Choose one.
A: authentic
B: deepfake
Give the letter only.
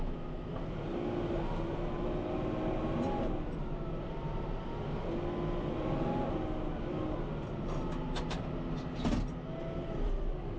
A